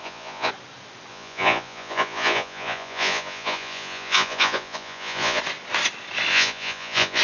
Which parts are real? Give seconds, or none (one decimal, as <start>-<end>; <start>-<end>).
0.5-1.1; 5.4-6.3